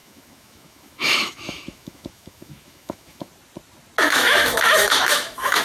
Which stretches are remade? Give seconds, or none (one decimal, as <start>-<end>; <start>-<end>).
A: 0.0-3.3; 4.0-5.6